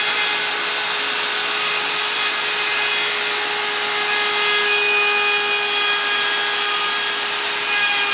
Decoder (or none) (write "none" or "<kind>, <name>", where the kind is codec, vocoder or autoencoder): none